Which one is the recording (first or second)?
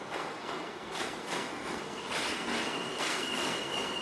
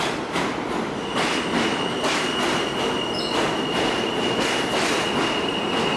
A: second